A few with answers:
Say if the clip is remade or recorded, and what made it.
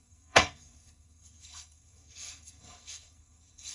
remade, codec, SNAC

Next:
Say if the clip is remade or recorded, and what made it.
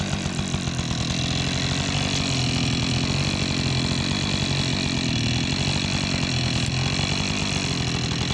recorded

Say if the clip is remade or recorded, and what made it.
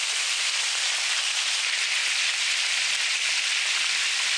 recorded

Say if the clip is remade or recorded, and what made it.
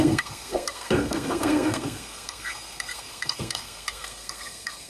remade, codec, SNAC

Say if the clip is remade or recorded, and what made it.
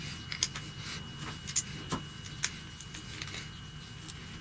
recorded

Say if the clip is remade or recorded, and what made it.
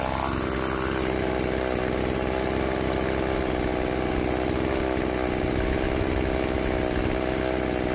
recorded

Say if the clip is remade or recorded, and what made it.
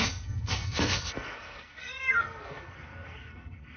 remade, codec, SNAC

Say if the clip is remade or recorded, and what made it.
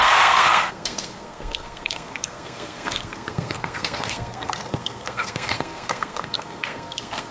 remade, codec, SNAC